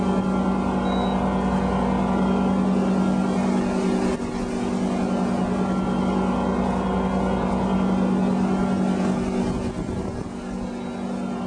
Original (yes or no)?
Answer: yes